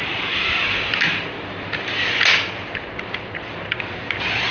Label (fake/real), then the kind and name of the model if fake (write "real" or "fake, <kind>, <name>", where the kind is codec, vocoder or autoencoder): real